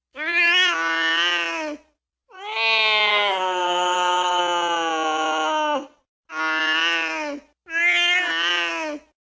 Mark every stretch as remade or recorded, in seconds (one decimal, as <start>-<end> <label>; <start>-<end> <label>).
0.0-3.1 recorded; 3.1-4.4 remade; 4.4-9.3 recorded